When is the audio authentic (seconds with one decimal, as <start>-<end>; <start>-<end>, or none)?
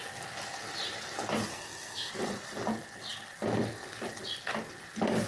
0.0-1.5; 2.1-5.3